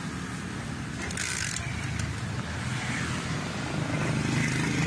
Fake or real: real